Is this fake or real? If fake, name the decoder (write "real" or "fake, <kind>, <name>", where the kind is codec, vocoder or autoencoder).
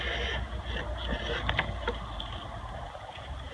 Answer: real